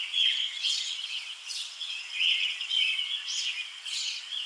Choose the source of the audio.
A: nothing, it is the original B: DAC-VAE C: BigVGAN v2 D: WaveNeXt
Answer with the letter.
D